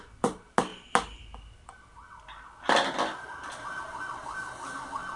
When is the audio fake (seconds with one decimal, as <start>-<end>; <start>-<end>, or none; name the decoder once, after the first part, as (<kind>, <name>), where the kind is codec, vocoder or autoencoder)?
none